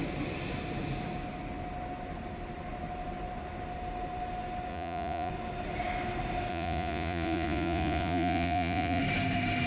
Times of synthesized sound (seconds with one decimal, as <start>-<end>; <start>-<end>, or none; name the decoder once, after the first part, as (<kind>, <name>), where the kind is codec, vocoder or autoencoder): 4.7-5.3 (vocoder, Vocos); 6.5-9.0